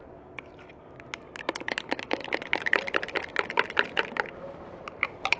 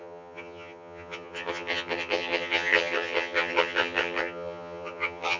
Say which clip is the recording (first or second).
first